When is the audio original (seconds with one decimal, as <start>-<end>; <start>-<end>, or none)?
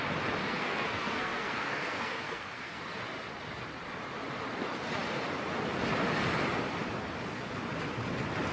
0.0-0.4; 2.8-8.5